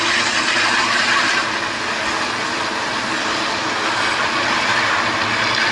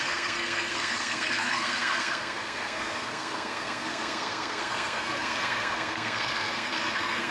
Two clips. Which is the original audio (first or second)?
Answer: first